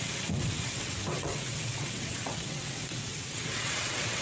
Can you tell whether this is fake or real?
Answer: fake